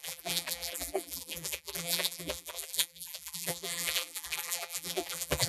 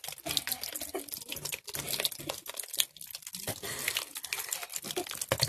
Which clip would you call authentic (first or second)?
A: second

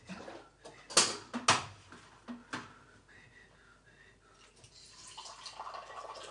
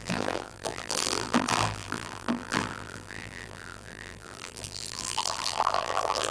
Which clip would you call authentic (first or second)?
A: first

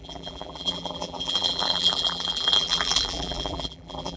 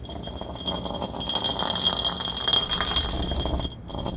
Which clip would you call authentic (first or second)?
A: second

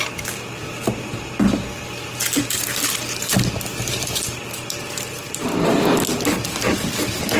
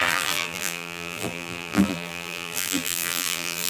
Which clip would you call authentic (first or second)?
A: first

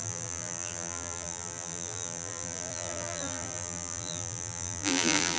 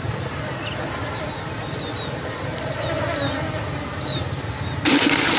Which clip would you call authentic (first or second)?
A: second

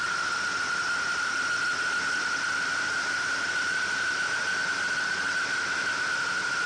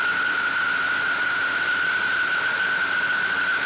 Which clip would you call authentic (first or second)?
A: second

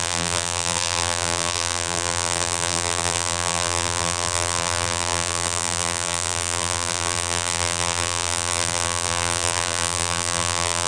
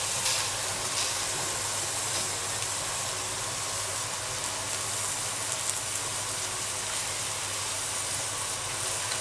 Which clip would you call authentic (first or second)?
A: second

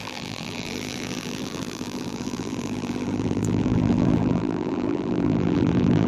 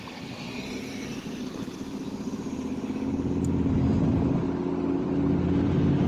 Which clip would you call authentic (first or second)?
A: second